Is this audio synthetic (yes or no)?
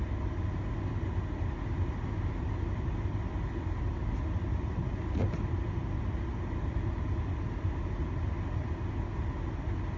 no